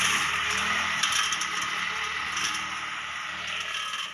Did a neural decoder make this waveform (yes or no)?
no